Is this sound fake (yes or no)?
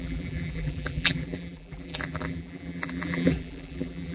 yes